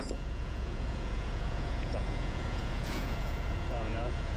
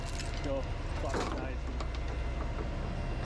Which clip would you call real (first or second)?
second